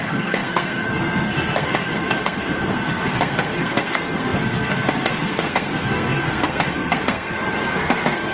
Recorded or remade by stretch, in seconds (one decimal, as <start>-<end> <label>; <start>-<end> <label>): 0.0-8.3 remade